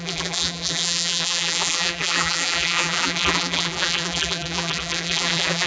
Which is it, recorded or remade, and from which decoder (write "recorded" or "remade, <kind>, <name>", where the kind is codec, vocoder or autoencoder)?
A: remade, vocoder, BigVGAN v2